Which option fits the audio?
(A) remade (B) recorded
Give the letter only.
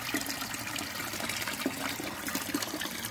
B